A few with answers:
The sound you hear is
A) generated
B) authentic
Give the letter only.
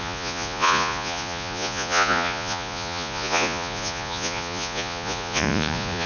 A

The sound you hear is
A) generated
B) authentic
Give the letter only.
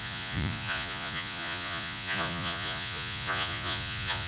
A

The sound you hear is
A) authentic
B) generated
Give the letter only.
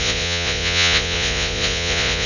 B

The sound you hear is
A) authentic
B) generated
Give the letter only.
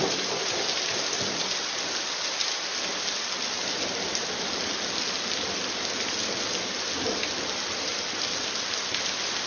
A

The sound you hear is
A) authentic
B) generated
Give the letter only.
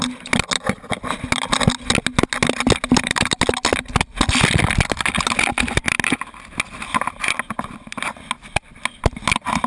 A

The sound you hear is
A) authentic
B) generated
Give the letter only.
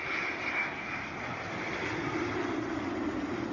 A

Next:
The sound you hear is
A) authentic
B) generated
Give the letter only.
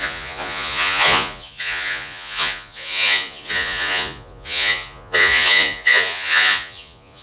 B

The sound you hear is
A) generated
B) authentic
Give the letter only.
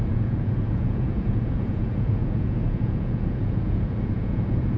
A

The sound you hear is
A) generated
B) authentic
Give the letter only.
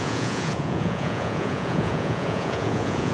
A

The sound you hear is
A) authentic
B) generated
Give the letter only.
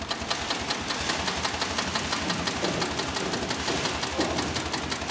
A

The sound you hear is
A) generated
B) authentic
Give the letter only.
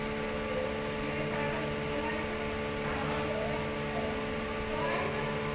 B